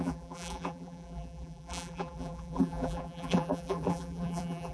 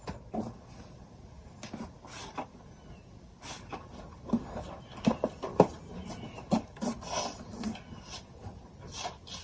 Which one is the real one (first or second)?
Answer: second